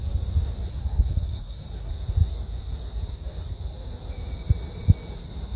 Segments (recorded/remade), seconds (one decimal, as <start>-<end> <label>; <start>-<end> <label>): 0.0-0.7 recorded; 0.7-1.9 remade; 1.9-5.6 recorded

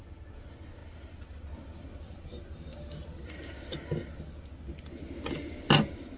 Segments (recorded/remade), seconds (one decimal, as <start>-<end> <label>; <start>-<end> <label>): 0.0-6.2 recorded

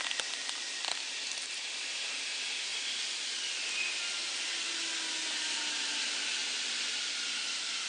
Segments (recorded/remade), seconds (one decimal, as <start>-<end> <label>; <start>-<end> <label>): 0.0-6.4 recorded; 6.4-7.0 remade; 7.0-7.9 recorded

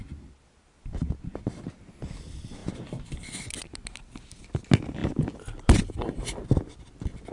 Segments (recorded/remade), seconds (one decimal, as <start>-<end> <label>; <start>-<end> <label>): 0.0-7.3 recorded

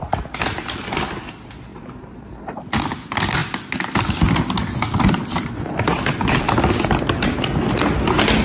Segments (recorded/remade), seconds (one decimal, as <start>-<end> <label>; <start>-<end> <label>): 0.0-1.7 recorded; 1.7-2.6 remade; 2.6-8.4 recorded